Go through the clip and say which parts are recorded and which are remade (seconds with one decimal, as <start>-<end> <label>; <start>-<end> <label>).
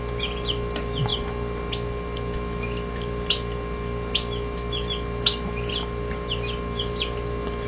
0.0-7.7 recorded